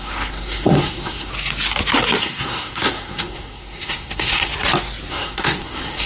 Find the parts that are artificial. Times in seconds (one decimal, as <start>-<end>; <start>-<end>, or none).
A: 0.0-1.3; 2.2-4.5; 5.1-6.1